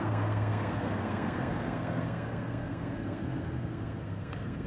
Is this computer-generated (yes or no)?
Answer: yes